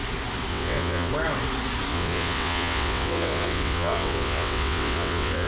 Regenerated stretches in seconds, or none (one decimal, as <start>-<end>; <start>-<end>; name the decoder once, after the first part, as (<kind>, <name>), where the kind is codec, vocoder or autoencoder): 0.5-1.1 (vocoder, WaveNeXt); 1.9-5.5